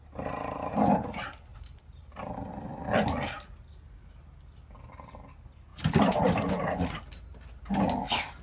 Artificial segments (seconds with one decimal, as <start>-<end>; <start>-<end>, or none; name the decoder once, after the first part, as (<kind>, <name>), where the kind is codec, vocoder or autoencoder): 1.5-2.2 (vocoder, BigVGAN v2); 5.7-7.6